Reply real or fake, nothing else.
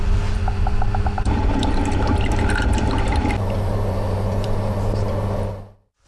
fake